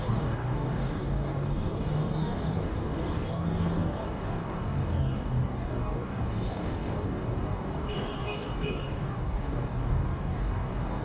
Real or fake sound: fake